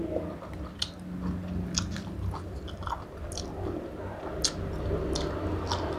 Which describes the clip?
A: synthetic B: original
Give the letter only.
B